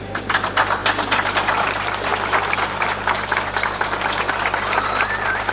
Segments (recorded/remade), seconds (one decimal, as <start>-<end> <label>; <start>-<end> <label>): 0.0-0.8 remade; 0.8-1.5 recorded; 1.5-5.5 remade